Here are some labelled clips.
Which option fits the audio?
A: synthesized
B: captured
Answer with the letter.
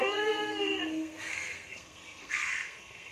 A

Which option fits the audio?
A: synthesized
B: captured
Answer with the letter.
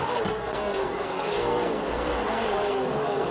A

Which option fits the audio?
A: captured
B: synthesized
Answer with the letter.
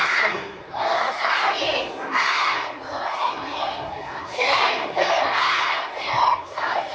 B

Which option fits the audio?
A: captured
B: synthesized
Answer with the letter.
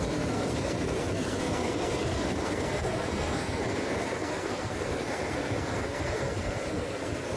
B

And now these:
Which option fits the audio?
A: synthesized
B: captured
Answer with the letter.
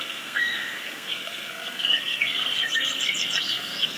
A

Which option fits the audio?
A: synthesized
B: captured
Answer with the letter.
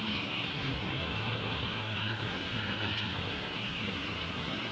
A